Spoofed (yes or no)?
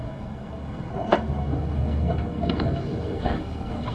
yes